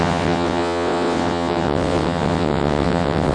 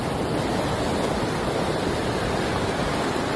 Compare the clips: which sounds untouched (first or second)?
second